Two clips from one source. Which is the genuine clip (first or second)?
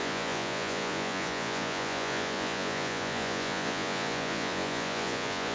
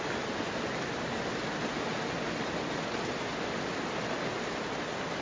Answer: second